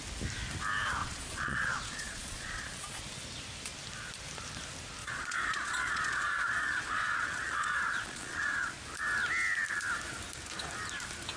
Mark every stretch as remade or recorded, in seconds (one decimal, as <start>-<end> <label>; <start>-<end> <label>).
0.0-1.0 recorded; 1.0-3.0 remade; 3.0-5.0 recorded; 5.0-8.7 remade; 8.7-11.4 recorded